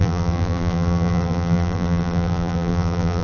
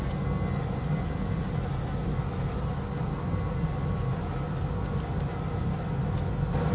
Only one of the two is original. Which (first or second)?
second